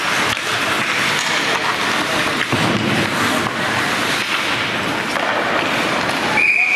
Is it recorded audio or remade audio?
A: recorded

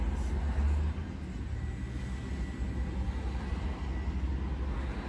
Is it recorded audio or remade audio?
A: recorded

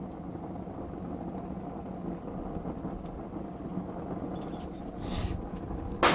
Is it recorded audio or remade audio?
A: recorded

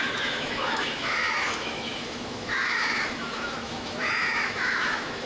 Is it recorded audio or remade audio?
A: remade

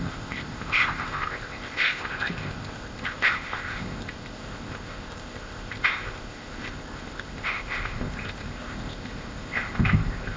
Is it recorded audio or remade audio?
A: remade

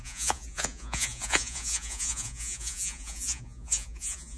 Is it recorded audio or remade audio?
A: remade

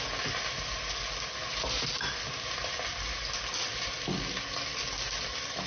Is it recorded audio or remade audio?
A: recorded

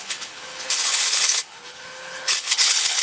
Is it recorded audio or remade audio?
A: remade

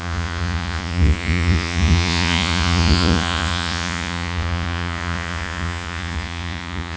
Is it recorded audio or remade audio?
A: remade